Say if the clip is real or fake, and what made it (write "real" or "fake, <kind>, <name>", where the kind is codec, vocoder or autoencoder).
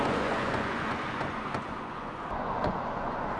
fake, vocoder, Vocos